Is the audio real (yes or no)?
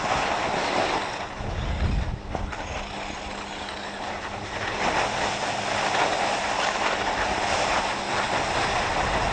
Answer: yes